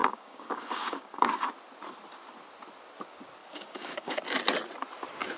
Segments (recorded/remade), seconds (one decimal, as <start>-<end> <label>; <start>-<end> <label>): 0.0-1.5 remade; 1.5-3.4 recorded; 3.4-4.2 remade; 4.2-5.4 recorded